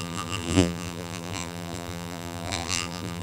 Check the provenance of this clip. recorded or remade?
remade